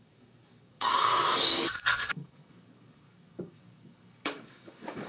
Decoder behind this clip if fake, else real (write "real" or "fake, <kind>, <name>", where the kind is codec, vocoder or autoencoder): fake, codec, DAC